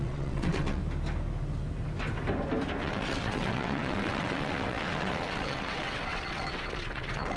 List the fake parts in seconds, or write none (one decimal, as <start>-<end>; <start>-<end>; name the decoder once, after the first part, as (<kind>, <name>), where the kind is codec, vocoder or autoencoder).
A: 0.0-0.8 (vocoder, WaveNeXt); 2.8-7.4